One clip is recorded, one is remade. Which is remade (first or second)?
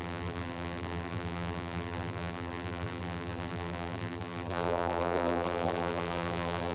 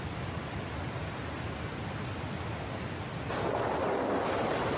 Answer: first